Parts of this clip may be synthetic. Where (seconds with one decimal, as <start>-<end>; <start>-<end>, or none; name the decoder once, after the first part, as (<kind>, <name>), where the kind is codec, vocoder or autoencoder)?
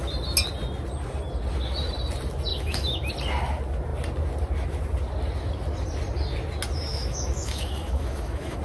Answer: 2.5-3.1 (autoencoder, DAC-VAE); 6.9-8.6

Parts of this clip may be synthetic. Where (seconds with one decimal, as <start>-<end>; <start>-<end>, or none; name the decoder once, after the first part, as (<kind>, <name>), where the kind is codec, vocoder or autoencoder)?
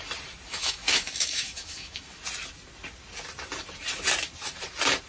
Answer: 0.5-2.2 (autoencoder, DAC-VAE)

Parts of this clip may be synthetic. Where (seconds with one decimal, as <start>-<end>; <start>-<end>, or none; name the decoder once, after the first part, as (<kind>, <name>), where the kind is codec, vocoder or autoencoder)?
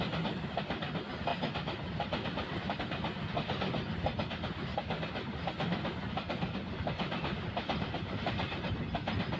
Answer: 1.3-2.8 (vocoder, BigVGAN v2); 4.7-8.7